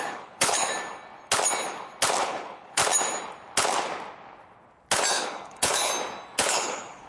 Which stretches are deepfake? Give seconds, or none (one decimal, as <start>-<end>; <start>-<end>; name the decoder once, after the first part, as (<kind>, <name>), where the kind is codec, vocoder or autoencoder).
0.0-0.7 (codec, HILCodec); 2.2-2.8; 5.1-5.9; 6.5-7.1